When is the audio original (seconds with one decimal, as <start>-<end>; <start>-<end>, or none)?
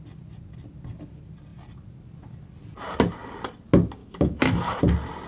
0.0-4.0; 4.8-5.3